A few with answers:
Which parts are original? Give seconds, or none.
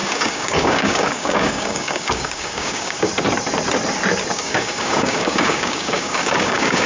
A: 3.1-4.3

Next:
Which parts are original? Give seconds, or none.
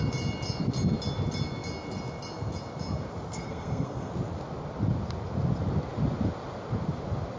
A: 0.0-3.3; 4.1-7.4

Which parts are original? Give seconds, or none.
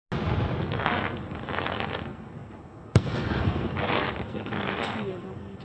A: 0.0-0.6